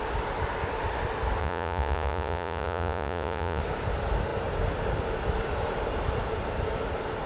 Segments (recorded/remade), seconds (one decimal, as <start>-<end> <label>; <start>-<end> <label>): 0.0-1.4 recorded; 1.4-3.6 remade; 3.6-7.3 recorded